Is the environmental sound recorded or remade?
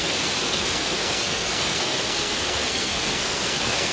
remade